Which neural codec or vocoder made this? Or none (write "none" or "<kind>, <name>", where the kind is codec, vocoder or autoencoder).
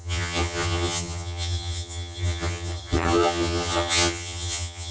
vocoder, HiFi-GAN